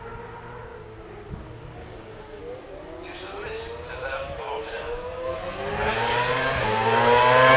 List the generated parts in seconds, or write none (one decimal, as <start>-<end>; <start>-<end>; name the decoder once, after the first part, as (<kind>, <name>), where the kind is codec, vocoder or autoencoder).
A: 1.8-2.4 (codec, DAC); 4.1-5.4; 5.9-6.5